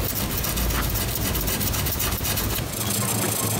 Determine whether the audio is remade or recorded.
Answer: recorded